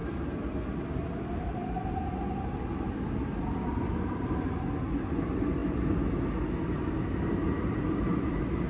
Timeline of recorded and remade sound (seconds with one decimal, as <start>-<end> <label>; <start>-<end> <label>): 0.0-8.7 recorded